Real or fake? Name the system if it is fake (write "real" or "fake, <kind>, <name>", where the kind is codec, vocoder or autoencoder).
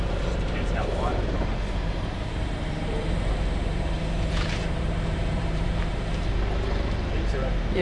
fake, vocoder, BigVGAN v2